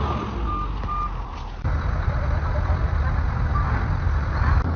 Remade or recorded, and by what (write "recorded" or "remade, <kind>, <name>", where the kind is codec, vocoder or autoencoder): recorded